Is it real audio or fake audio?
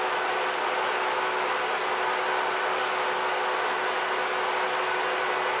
real